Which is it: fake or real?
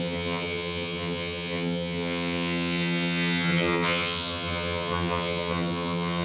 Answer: fake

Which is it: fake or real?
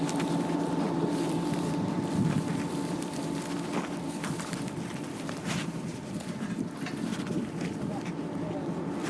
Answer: fake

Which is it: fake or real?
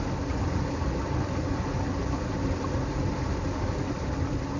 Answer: real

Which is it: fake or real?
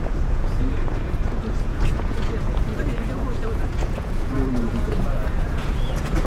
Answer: fake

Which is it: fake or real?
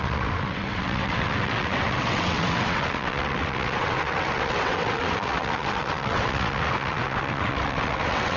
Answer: fake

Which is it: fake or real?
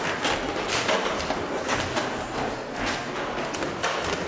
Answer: real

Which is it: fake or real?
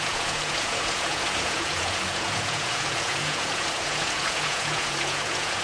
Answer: fake